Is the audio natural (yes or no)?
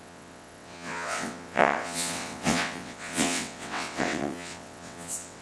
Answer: no